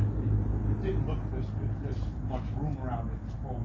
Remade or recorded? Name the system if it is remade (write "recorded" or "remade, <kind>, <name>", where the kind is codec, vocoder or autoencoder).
recorded